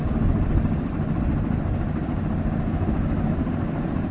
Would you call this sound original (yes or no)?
yes